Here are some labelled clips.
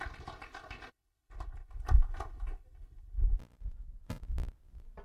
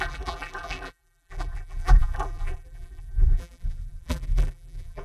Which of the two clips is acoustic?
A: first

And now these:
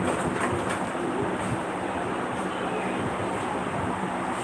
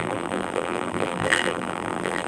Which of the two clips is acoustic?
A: first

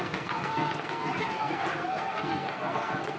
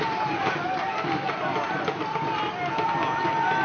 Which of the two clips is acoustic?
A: second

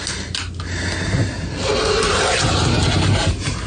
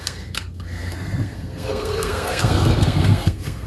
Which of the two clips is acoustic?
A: first